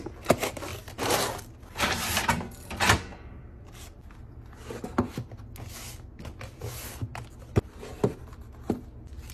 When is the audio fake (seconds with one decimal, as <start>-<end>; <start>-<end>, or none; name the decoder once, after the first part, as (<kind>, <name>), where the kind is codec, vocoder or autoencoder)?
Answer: 0.7-4.7 (vocoder, BigVGAN v2); 7.1-8.2